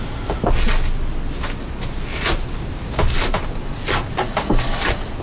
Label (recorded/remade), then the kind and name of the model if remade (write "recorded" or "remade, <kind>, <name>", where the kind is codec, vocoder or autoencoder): recorded